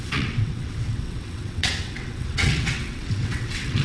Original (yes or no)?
no